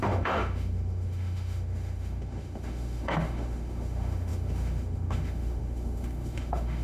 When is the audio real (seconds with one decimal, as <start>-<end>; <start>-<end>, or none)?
none